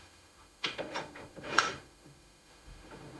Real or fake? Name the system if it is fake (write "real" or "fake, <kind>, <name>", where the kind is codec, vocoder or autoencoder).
fake, autoencoder, DAC-VAE